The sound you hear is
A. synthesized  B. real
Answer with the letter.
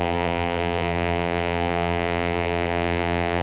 A